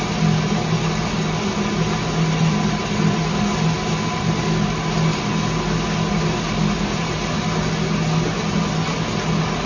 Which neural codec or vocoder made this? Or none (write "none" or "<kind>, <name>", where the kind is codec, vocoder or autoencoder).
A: none